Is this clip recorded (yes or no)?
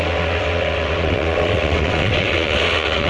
no